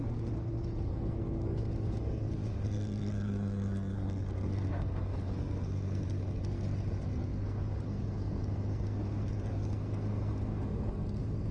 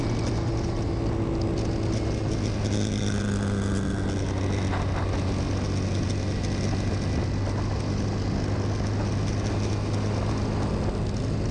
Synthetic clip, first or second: first